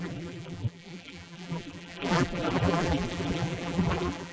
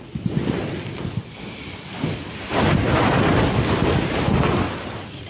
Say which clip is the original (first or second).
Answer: second